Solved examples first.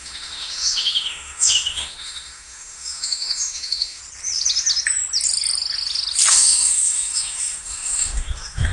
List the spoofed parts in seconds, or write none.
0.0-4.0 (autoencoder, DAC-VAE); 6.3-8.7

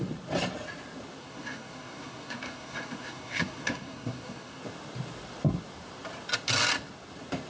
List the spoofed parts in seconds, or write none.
1.2-4.6 (codec, SNAC)

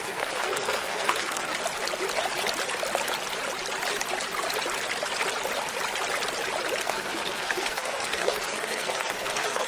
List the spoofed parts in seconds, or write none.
0.0-1.5 (codec, SNAC); 6.8-9.7

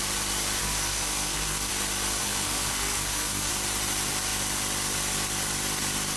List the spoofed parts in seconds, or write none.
0.6-1.7 (codec, SNAC); 2.2-3.5

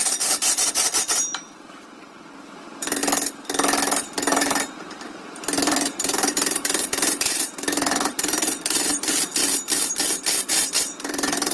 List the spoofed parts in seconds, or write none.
0.0-3.0 (vocoder, BigVGAN v2); 4.0-9.4; 10.3-11.5

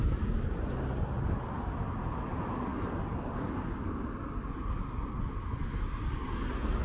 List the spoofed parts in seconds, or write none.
none